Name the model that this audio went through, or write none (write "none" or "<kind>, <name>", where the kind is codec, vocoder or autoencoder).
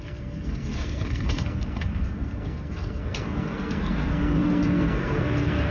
codec, SNAC